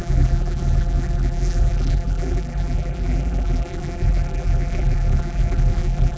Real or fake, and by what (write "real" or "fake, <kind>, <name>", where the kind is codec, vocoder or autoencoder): fake, vocoder, BigVGAN v2